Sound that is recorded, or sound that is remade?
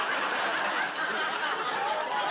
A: recorded